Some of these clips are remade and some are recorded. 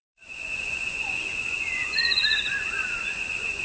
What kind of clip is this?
remade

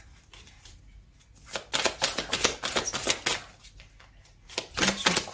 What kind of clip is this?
recorded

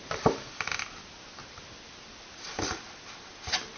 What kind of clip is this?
recorded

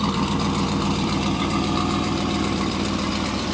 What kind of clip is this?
remade